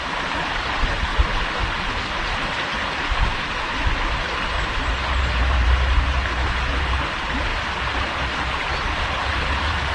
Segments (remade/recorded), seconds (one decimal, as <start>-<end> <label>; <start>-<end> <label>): 0.0-1.1 remade; 1.1-1.9 recorded; 1.9-7.5 remade; 7.5-9.0 recorded; 9.0-9.9 remade